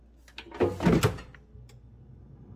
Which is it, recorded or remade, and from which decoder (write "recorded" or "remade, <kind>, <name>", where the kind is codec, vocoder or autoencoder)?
recorded